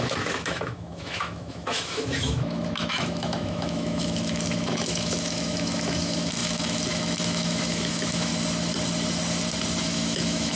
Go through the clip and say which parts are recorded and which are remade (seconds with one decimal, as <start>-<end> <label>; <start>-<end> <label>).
0.0-8.3 remade; 8.3-9.8 recorded; 9.8-10.6 remade